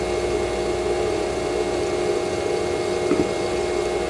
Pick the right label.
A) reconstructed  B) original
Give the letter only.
B